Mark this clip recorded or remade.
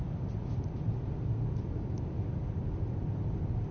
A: recorded